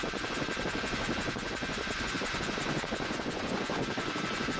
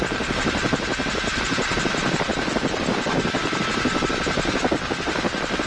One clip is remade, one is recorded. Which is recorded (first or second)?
second